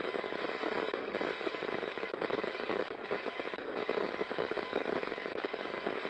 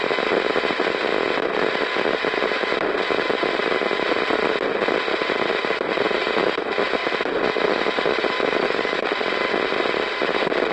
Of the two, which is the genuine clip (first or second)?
second